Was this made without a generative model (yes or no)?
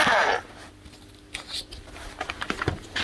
yes